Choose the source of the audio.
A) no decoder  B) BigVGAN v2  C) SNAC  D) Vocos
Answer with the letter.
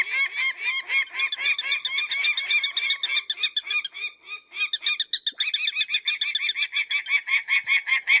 A